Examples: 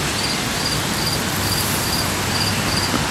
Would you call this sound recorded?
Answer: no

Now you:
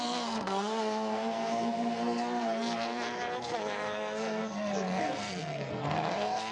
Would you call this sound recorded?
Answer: no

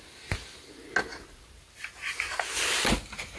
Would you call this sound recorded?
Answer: yes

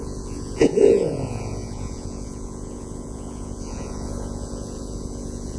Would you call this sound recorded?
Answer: no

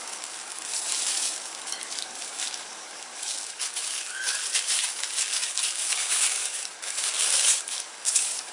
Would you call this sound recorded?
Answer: no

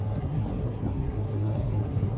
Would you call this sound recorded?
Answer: no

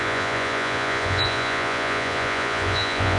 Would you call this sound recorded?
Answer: no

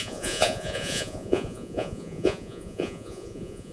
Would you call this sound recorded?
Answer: no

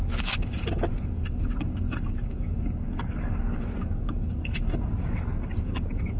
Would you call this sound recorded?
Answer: no